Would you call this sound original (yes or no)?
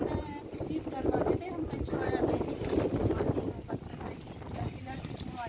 yes